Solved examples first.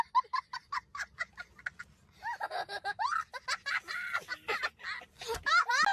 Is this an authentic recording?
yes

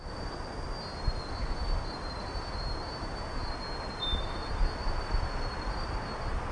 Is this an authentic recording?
yes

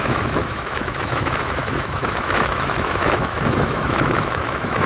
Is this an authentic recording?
no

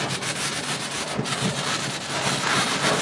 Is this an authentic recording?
yes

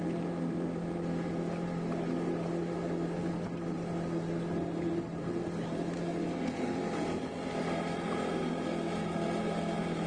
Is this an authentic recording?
yes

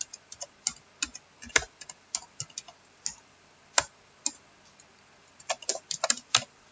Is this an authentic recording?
yes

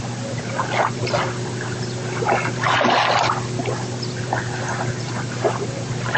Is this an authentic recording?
yes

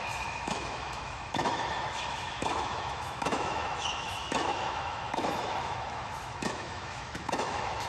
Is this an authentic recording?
no